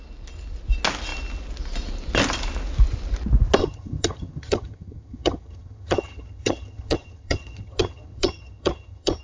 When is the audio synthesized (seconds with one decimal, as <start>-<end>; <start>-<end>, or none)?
3.6-9.2